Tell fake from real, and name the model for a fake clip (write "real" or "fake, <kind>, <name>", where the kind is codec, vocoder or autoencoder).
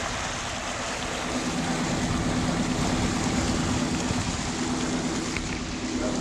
real